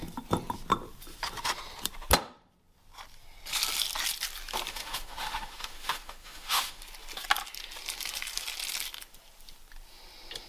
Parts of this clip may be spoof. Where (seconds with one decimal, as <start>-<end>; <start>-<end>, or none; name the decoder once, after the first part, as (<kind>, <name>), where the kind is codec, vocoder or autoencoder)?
4.7-6.8 (autoencoder, DAC-VAE)